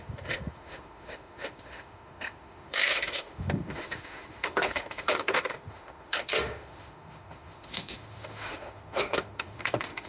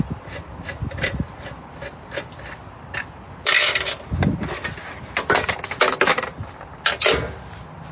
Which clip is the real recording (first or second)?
second